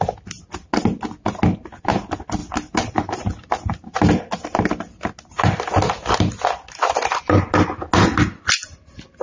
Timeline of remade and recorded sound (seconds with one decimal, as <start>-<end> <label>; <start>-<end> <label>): 0.0-9.2 recorded